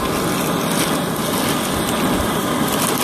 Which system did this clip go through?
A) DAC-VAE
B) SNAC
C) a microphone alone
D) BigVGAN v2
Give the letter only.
C